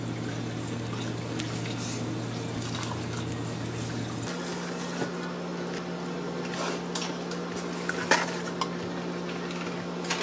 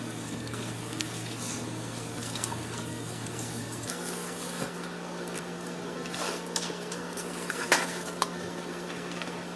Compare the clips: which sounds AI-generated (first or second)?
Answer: second